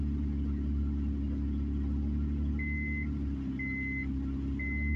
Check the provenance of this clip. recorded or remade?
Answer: recorded